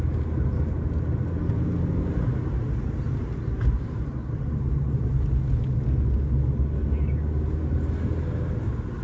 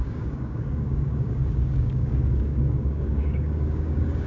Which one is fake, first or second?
second